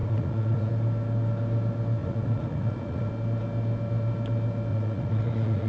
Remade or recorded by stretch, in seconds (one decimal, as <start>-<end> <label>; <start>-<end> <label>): 0.0-0.7 remade; 0.7-2.0 recorded; 2.0-3.1 remade; 3.1-4.7 recorded; 4.7-5.7 remade